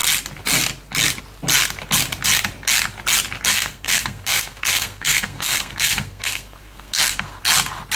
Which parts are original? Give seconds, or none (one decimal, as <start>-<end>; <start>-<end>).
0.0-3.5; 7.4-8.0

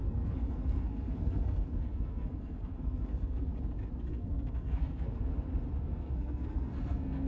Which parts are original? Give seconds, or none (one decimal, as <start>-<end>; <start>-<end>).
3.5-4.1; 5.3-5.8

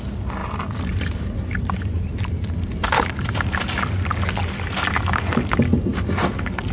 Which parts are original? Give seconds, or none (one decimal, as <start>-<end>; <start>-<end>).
0.0-0.4; 3.4-5.9

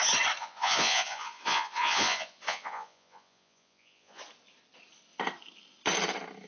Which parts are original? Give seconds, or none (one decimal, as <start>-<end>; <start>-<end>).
0.0-0.4; 4.2-6.5

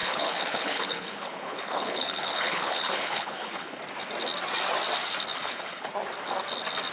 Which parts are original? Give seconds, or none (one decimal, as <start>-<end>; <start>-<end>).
3.8-5.3; 5.9-6.9

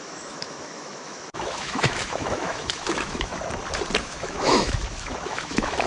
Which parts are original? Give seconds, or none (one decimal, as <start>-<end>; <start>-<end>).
3.3-4.0